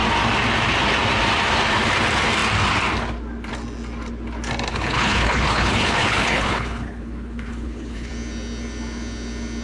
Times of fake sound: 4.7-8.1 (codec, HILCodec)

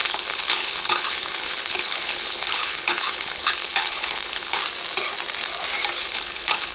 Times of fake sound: 0.0-4.6 (codec, HILCodec); 6.0-6.7

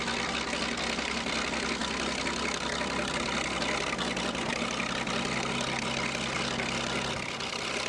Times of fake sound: none

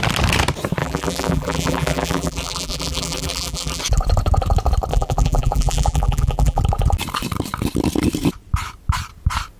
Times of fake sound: 0.8-3.8 (vocoder, BigVGAN v2); 4.9-6.6

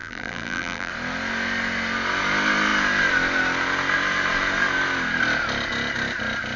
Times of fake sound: 0.0-0.9 (vocoder, BigVGAN v2)